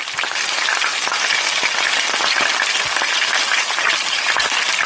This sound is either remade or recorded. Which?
recorded